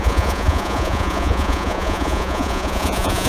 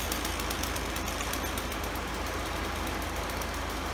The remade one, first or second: first